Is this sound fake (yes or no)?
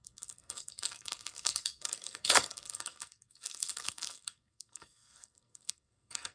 yes